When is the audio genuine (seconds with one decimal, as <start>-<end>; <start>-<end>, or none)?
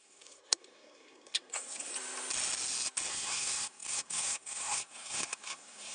1.9-3.1